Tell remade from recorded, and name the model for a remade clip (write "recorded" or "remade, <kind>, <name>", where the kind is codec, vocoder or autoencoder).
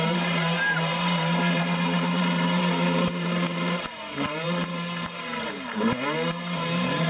remade, vocoder, BigVGAN v2